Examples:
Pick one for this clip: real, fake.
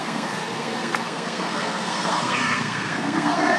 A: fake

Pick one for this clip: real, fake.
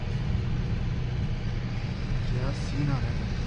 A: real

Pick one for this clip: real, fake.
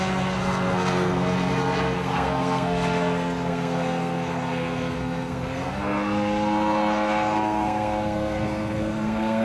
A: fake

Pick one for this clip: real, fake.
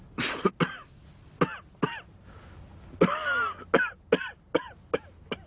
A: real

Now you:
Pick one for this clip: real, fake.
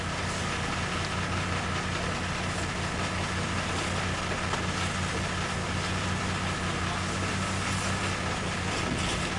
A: real